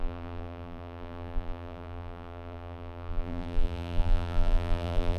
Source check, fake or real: fake